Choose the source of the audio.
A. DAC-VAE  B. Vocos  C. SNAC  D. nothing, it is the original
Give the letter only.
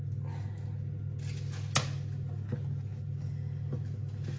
D